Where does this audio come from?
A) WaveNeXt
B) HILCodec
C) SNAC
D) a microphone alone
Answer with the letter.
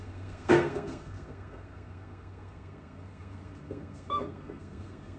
C